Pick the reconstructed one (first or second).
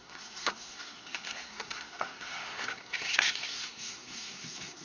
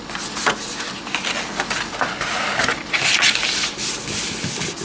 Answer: first